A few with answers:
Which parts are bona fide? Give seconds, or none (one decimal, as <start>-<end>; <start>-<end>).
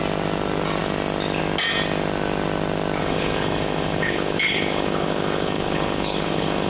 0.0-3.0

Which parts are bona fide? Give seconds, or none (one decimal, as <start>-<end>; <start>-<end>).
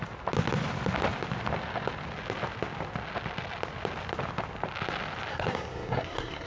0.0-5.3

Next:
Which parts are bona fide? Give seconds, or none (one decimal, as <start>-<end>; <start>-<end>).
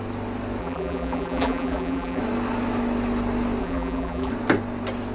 0.0-0.6; 2.2-3.6; 4.3-5.1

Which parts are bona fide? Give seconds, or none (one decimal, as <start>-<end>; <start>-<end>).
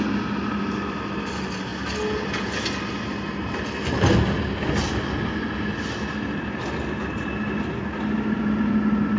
0.0-9.2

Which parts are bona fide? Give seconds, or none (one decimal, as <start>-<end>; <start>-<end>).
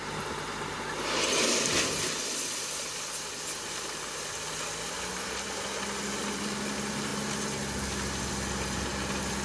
0.0-9.4